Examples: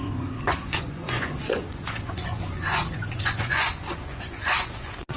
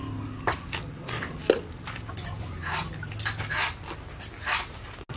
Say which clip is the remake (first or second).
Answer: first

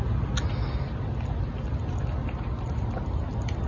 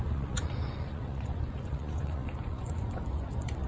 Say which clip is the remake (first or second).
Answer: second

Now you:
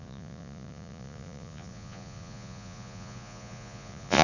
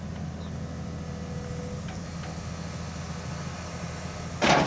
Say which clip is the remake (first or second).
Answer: first